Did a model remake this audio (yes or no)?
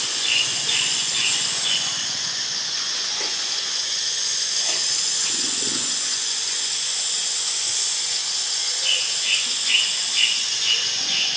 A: yes